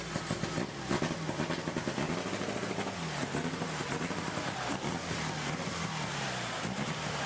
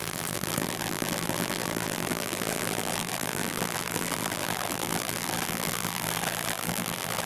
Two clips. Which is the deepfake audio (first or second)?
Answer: second